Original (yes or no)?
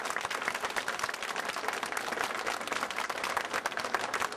yes